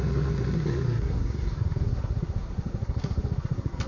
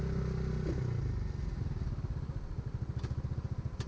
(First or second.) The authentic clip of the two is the second